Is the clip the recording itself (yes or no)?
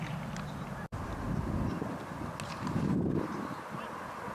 yes